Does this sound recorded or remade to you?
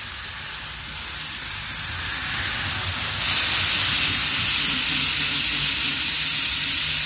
recorded